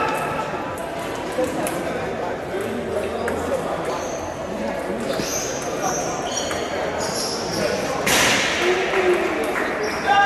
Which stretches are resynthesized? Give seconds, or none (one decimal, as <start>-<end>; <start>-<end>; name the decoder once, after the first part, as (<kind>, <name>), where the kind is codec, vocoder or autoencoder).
none